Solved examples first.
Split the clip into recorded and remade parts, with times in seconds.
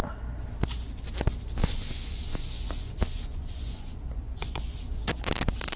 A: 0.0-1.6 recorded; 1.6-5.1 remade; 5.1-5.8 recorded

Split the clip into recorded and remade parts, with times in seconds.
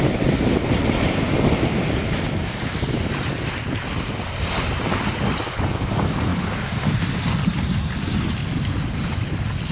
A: 0.0-8.4 recorded; 8.4-9.7 remade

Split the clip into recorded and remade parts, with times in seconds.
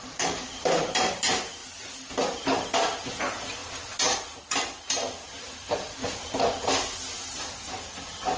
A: 0.0-8.4 recorded